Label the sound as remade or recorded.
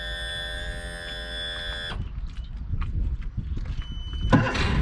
recorded